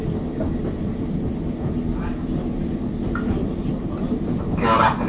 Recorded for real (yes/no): yes